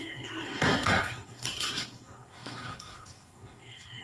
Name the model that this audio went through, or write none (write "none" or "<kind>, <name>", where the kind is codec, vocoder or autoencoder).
codec, SNAC